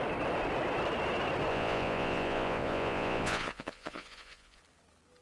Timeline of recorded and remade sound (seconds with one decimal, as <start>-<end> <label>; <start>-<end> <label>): 0.0-1.5 recorded; 1.5-4.6 remade; 4.6-5.2 recorded